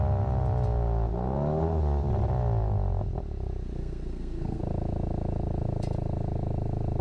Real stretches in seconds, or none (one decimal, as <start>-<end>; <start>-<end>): 0.0-3.8; 4.6-7.0